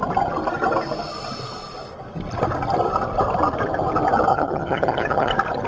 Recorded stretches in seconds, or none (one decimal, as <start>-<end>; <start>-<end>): 0.0-4.3; 5.3-5.7